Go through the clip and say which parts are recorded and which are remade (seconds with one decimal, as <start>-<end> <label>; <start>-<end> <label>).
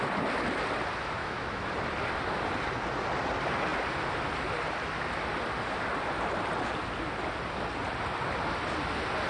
0.0-1.2 recorded; 1.2-1.7 remade; 1.7-9.3 recorded